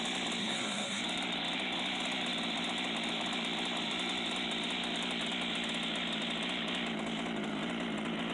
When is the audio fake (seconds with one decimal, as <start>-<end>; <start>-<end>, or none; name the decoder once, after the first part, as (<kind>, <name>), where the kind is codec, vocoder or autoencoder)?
0.4-1.0 (codec, SNAC)